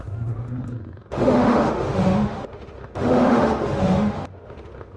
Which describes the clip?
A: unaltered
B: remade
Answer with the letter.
B